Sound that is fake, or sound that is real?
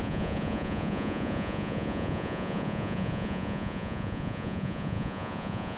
fake